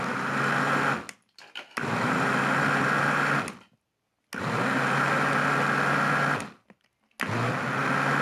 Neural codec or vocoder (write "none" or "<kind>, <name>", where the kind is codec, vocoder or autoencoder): none